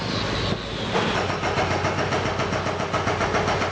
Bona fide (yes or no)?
yes